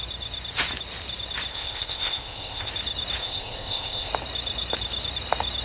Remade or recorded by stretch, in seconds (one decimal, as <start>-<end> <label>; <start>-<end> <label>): 0.0-1.5 recorded; 1.5-2.7 remade; 2.7-3.2 recorded; 3.2-4.1 remade; 4.1-5.6 recorded